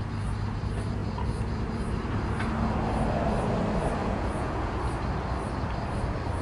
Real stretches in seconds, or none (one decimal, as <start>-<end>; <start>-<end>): 0.0-4.0; 4.8-6.4

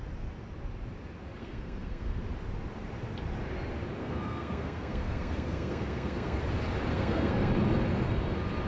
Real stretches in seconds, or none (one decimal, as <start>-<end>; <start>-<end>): 0.0-1.4; 2.2-4.0; 6.4-6.9; 7.5-8.7

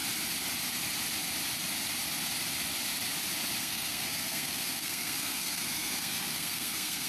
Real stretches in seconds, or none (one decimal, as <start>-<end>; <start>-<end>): 0.0-3.6

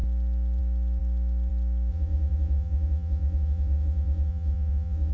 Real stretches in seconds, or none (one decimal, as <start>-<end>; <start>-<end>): 0.0-1.9